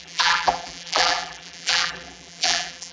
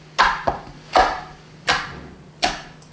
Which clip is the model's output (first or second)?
first